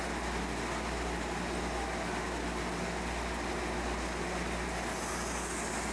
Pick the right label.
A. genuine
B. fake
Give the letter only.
A